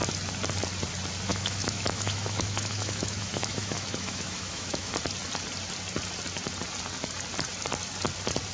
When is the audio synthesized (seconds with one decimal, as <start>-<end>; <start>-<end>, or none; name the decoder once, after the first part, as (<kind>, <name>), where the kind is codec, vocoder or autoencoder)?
1.3-4.9 (autoencoder, DAC-VAE)